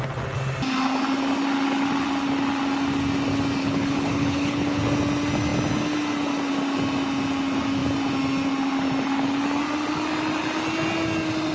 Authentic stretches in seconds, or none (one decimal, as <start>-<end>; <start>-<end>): 0.0-3.6; 4.8-11.5